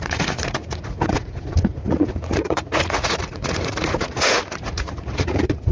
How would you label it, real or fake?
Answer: fake